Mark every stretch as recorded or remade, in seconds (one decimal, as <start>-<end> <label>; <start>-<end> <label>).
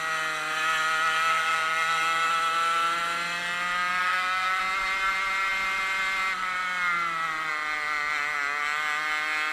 0.0-1.3 recorded; 1.3-2.3 remade; 2.3-4.0 recorded; 4.0-4.6 remade; 4.6-9.5 recorded